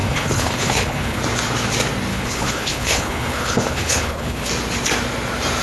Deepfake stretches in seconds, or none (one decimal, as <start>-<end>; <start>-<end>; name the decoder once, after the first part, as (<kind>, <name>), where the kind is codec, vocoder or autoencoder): 0.0-1.2 (codec, HILCodec); 2.1-4.5